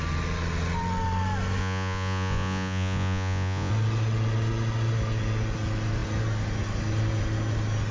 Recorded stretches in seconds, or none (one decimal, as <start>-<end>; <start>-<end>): 0.0-1.6; 3.7-7.9